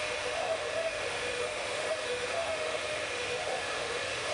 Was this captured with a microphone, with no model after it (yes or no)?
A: no